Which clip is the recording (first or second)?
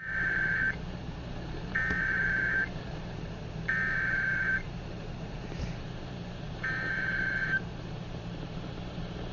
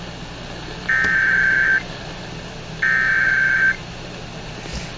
second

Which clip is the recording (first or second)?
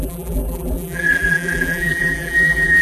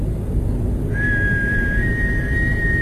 second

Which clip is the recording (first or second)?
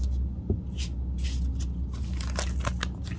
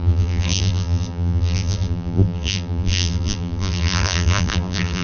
first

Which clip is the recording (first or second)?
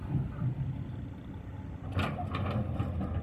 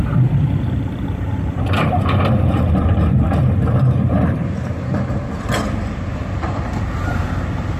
first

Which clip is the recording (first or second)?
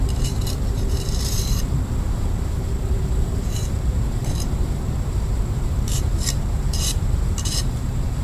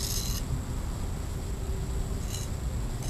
second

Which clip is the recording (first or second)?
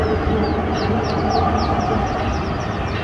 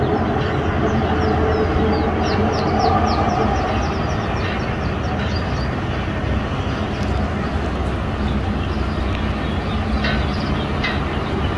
second